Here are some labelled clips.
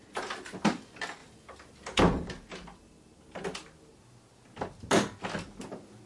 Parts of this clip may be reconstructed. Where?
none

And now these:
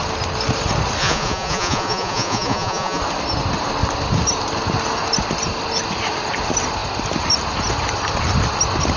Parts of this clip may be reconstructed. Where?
1.0-3.0 (vocoder, Vocos)